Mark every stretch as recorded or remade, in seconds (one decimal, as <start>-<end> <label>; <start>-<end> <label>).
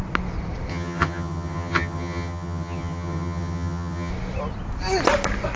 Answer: 0.0-0.7 recorded; 0.7-4.1 remade; 4.1-5.6 recorded